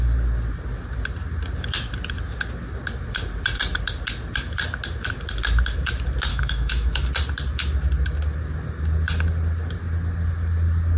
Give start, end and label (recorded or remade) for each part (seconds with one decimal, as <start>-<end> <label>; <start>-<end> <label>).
0.0-6.3 recorded; 6.3-7.1 remade; 7.1-11.0 recorded